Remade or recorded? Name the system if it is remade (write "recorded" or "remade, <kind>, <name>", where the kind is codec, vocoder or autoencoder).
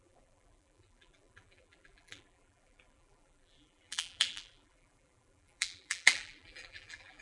remade, vocoder, BigVGAN v2